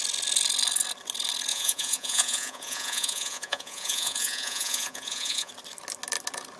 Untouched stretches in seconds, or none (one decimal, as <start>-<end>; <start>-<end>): 0.0-1.5; 5.5-6.6